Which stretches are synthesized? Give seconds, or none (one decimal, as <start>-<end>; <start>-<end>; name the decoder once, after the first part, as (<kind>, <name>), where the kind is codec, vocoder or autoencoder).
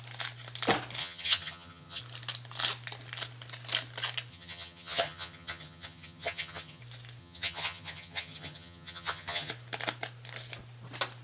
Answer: 1.0-2.0 (vocoder, HiFi-GAN); 4.3-6.8; 7.2-9.5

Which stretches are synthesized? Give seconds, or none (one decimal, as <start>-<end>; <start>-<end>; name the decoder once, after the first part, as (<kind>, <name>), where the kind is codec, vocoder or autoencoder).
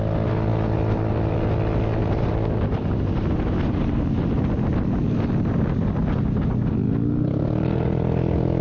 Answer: none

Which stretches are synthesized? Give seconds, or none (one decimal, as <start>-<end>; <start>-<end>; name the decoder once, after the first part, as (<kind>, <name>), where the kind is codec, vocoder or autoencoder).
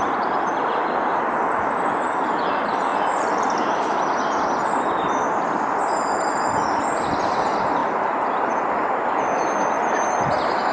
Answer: none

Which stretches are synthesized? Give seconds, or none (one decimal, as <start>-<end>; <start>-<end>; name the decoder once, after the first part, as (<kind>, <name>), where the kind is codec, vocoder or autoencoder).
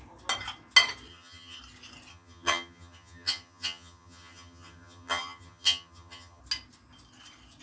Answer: 1.1-1.6 (vocoder, HiFi-GAN); 2.1-6.4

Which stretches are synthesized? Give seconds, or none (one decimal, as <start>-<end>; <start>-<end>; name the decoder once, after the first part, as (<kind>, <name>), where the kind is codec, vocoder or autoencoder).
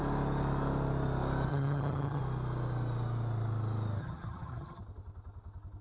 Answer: 1.5-2.2 (vocoder, HiFi-GAN); 4.0-4.8